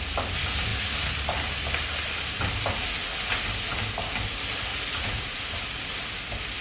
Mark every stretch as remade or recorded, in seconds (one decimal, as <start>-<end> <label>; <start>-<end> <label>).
0.0-4.7 recorded; 4.7-5.5 remade; 5.5-6.6 recorded